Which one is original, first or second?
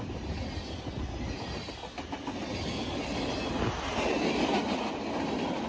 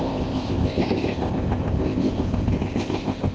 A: first